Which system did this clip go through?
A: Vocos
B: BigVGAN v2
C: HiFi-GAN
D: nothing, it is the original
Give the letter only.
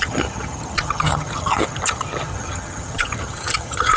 C